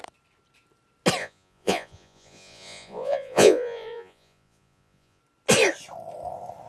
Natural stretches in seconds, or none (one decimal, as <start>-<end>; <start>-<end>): 0.0-1.2; 5.2-6.7